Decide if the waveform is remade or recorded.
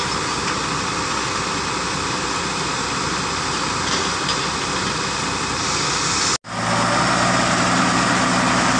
recorded